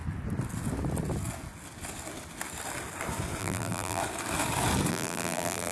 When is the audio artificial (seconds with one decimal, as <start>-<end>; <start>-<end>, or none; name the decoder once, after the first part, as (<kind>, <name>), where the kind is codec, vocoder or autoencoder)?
3.4-4.0 (vocoder, BigVGAN v2); 4.9-5.7